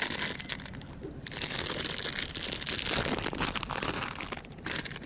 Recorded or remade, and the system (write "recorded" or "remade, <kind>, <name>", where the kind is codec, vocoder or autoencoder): recorded